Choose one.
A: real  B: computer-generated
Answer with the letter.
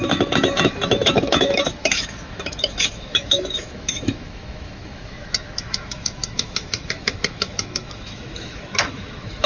B